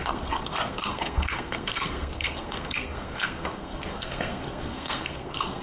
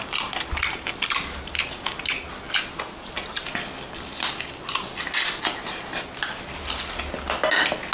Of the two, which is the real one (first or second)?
second